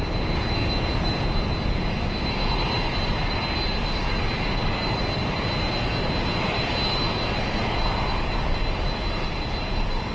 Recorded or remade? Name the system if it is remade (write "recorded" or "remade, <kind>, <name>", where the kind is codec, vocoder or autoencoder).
recorded